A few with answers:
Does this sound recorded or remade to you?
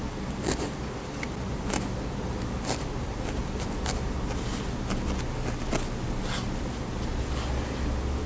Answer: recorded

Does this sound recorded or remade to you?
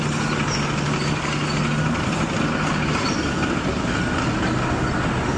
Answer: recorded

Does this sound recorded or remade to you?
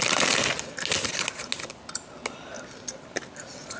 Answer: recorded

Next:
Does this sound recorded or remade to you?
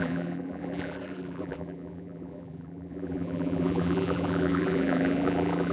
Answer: remade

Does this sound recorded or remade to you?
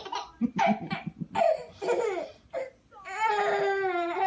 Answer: recorded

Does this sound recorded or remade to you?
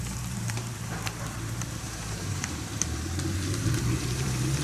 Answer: remade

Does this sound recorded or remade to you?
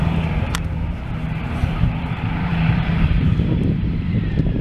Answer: remade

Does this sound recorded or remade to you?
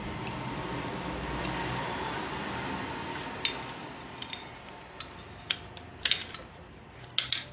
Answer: recorded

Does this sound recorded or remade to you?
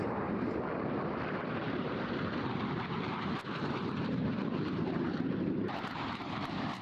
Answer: remade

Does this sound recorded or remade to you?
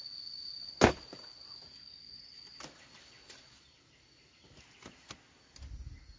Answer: recorded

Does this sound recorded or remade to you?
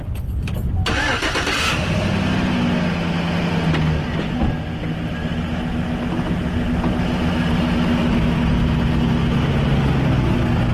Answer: recorded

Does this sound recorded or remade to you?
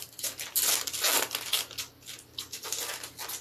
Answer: recorded